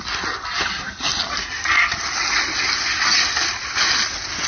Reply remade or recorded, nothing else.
recorded